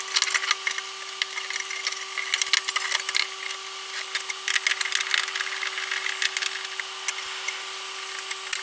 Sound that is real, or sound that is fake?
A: real